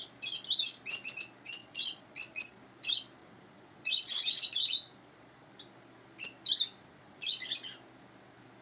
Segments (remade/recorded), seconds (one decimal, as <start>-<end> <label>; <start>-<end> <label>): 0.0-1.6 recorded; 1.6-2.6 remade; 2.6-3.2 recorded; 3.2-5.5 remade; 5.5-6.8 recorded; 6.8-7.3 remade; 7.3-8.6 recorded